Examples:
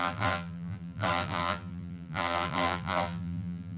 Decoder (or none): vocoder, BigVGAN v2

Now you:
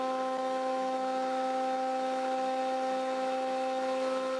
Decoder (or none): autoencoder, DAC-VAE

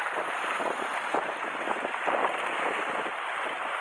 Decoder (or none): none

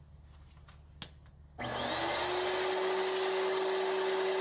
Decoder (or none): none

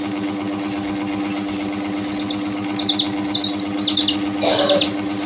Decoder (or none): none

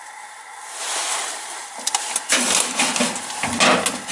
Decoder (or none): none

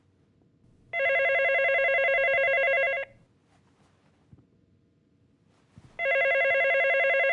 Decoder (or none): none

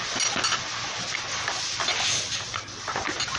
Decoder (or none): none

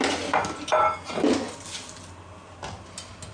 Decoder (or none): none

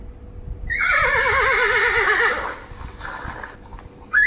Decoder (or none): none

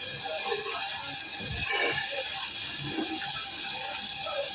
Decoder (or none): none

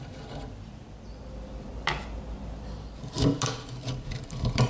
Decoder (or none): vocoder, BigVGAN v2